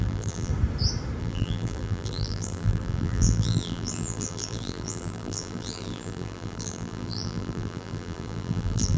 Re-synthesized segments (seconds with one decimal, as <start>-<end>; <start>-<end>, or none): 0.0-0.5; 1.2-9.0

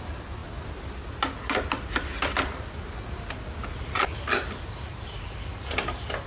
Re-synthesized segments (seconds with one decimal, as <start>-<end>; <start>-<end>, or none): none

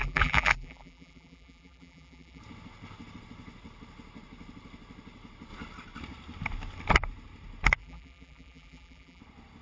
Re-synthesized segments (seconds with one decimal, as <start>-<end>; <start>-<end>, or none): 0.0-2.4; 7.8-9.2

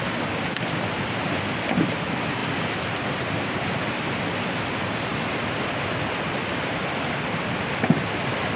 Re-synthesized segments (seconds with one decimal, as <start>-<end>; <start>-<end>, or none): none

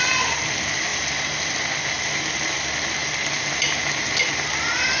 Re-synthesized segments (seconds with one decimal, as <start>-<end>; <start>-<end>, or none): 0.0-3.0; 4.0-5.0